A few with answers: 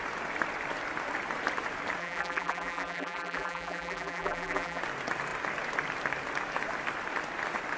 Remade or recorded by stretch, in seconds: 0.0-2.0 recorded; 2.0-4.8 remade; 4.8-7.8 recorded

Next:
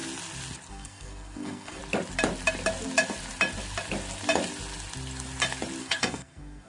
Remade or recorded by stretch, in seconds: 0.0-0.7 recorded; 0.7-1.8 remade; 1.8-5.8 recorded; 5.8-6.7 remade